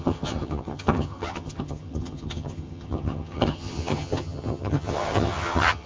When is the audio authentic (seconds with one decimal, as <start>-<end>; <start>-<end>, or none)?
none